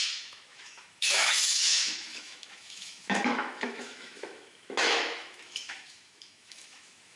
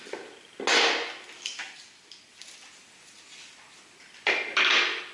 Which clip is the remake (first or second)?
first